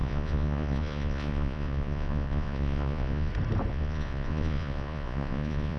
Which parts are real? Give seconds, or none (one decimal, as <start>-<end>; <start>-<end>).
3.3-3.7